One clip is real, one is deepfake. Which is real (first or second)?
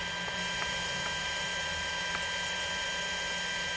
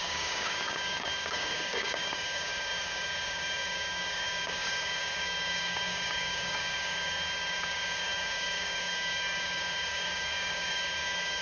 first